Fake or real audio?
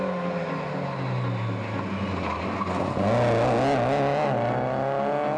real